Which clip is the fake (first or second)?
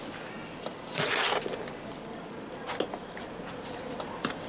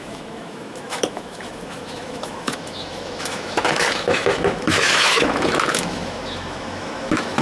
second